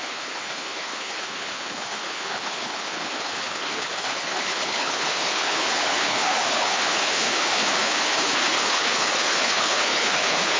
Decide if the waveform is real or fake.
fake